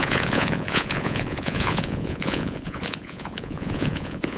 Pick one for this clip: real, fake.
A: fake